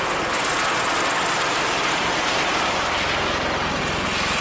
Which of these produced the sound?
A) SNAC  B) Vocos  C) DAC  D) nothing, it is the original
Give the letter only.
D